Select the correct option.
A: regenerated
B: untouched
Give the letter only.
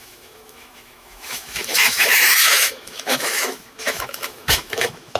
A